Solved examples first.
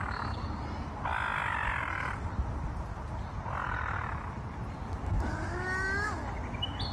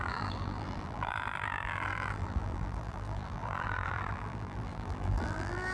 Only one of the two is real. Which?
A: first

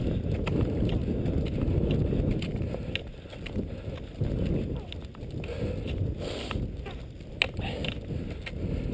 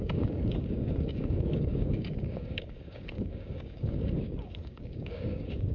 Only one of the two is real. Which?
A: first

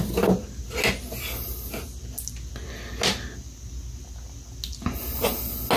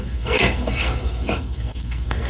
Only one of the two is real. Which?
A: first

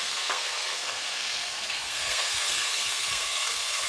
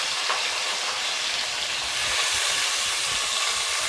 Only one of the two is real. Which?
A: second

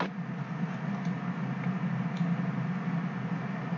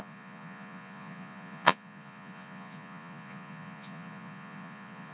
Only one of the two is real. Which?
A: first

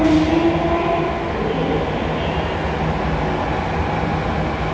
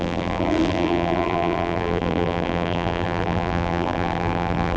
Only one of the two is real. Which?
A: first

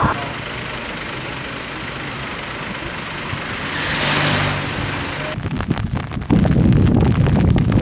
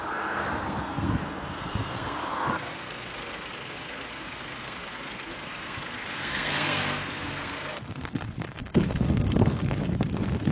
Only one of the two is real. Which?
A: first